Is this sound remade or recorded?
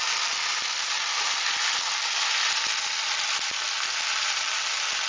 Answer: recorded